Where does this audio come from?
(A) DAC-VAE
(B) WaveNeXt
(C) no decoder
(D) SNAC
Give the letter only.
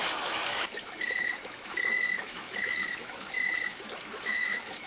A